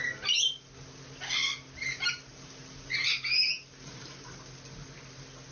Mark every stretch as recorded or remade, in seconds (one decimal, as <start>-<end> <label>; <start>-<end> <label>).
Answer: 0.0-1.8 recorded; 1.8-4.4 remade; 4.4-5.5 recorded